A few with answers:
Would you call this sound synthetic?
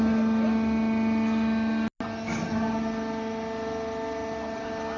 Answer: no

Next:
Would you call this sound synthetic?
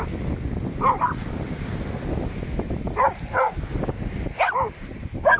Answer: no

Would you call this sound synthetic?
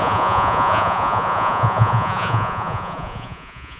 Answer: yes